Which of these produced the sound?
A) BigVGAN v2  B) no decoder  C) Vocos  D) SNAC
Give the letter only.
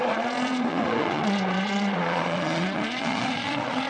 C